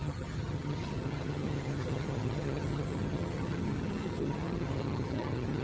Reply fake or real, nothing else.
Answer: fake